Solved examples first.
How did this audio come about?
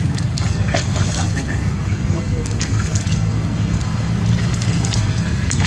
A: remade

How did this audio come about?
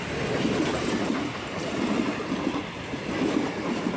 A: recorded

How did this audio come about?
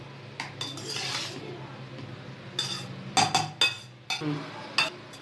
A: recorded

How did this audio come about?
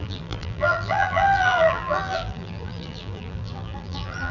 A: remade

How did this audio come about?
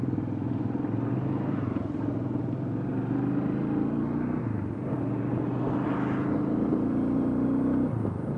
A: recorded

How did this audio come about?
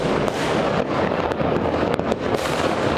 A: remade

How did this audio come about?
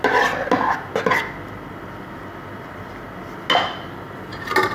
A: recorded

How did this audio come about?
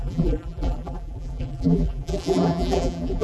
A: remade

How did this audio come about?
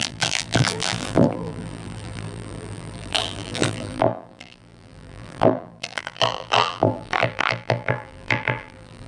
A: remade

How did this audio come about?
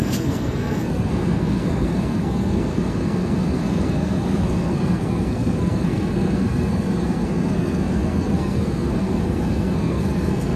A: remade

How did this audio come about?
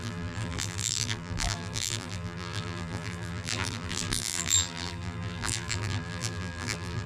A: remade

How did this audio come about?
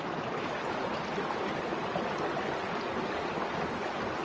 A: recorded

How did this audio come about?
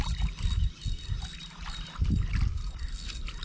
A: recorded